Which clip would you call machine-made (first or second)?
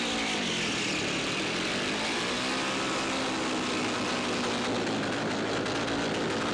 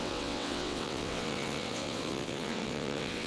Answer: second